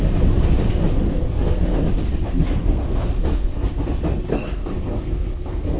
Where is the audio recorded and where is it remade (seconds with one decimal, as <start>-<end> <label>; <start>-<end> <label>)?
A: 0.0-1.1 recorded; 1.1-1.8 remade; 1.8-2.6 recorded; 2.6-3.7 remade; 3.7-4.3 recorded; 4.3-5.8 remade